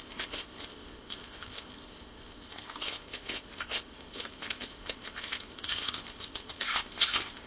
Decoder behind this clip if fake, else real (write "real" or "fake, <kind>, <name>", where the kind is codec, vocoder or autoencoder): fake, codec, ZipCodec